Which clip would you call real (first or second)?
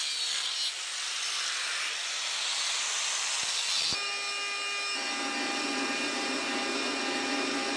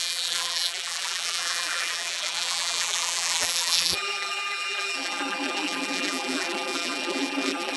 first